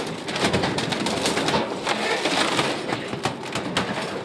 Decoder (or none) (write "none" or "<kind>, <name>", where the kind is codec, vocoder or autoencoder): none